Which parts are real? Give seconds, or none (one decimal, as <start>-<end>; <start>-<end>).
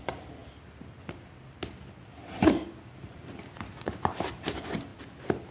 0.0-2.2; 4.5-5.5